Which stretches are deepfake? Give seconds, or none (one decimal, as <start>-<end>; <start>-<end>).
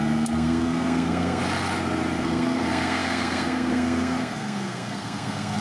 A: 0.0-1.4; 2.2-5.6